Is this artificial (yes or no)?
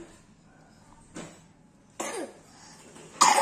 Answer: no